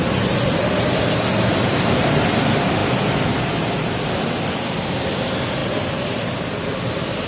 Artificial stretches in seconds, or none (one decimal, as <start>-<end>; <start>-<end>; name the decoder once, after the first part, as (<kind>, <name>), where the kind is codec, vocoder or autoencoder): none